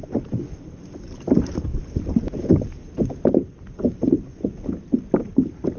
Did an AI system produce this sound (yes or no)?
no